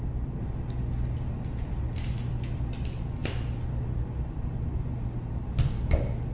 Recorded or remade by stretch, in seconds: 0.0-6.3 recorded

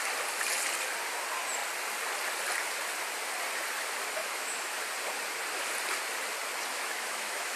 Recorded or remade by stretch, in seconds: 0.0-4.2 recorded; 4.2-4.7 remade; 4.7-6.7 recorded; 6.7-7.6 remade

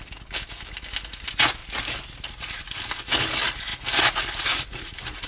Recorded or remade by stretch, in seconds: 0.0-5.3 recorded

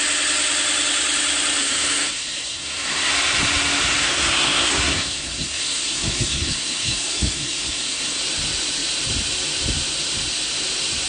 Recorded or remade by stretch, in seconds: 0.0-1.6 recorded; 1.6-3.1 remade; 3.1-4.0 recorded; 4.0-8.2 remade; 8.2-11.1 recorded

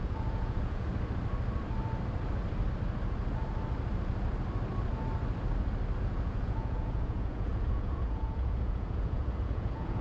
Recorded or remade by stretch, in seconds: 0.0-0.9 remade; 0.9-6.0 recorded; 6.0-10.0 remade